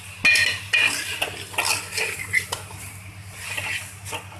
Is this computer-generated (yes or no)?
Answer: no